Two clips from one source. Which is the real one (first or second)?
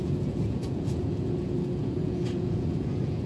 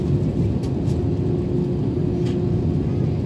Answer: second